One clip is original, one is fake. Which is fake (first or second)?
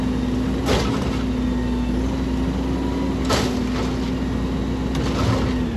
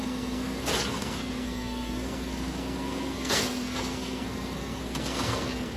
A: second